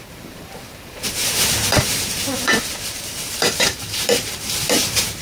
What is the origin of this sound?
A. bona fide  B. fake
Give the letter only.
B